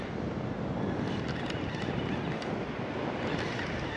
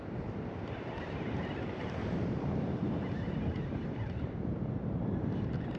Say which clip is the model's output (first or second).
second